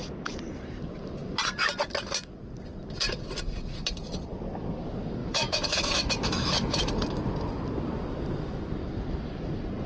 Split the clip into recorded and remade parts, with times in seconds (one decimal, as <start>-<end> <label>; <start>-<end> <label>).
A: 0.0-5.2 recorded; 5.2-6.9 remade; 6.9-9.9 recorded